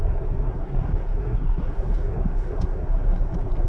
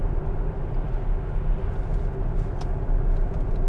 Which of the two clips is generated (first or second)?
first